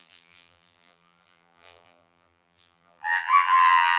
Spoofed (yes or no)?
yes